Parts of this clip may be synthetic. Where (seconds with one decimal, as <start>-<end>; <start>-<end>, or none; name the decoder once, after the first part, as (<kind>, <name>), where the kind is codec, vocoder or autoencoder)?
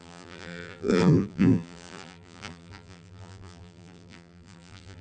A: 0.0-5.0 (vocoder, BigVGAN v2)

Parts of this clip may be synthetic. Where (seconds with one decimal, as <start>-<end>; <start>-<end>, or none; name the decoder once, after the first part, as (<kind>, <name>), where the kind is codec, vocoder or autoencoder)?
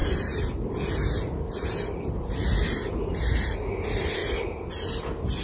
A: none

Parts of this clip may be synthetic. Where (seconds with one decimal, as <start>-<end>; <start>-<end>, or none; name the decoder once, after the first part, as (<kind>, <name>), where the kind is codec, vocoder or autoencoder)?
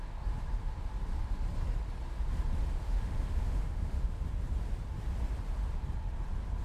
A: 2.8-4.2 (autoencoder, DAC-VAE)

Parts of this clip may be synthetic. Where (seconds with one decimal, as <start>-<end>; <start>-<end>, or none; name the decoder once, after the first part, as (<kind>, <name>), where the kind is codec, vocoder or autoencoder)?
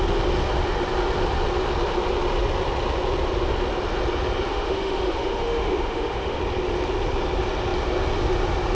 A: 4.5-6.4 (autoencoder, DAC-VAE)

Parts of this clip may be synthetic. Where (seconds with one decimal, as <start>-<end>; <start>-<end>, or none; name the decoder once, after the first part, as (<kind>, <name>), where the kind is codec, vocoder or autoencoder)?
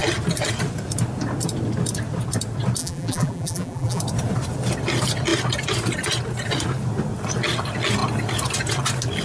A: 2.8-4.0 (vocoder, BigVGAN v2)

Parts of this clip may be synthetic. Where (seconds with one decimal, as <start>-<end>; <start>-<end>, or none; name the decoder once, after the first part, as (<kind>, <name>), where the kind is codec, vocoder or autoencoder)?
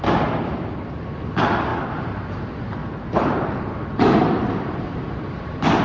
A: 2.8-5.8 (vocoder, BigVGAN v2)